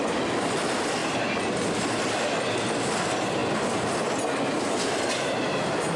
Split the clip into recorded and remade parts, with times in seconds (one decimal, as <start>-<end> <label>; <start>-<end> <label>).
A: 0.0-3.4 recorded; 3.4-6.0 remade